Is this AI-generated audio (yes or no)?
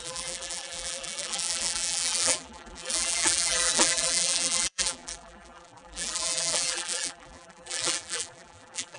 yes